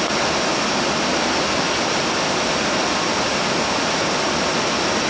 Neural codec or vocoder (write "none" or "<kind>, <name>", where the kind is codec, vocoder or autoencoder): none